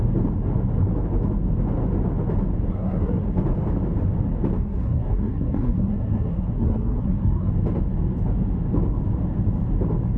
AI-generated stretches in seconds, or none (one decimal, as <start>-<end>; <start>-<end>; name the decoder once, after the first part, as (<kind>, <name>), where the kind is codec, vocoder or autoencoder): 2.7-3.3 (codec, SNAC); 4.6-7.5